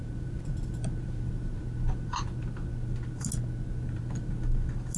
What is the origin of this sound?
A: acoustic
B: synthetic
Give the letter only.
A